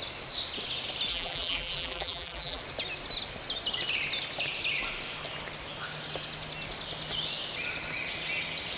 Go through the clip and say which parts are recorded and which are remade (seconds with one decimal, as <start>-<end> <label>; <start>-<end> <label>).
0.0-1.1 recorded; 1.1-2.6 remade; 2.6-8.8 recorded